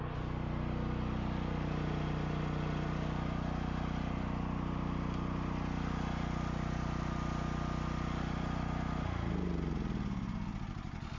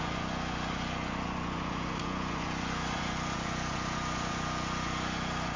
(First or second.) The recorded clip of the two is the first